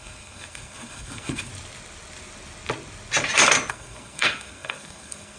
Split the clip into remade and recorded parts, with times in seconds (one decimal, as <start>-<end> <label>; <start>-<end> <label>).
0.0-1.5 remade; 1.5-3.7 recorded; 3.7-5.4 remade